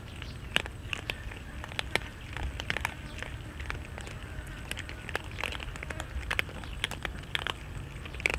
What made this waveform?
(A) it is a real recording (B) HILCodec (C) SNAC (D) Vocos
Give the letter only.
A